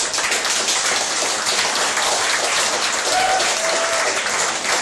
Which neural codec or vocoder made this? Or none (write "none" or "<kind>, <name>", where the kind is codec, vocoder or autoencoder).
none